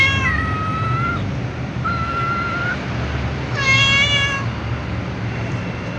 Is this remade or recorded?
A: recorded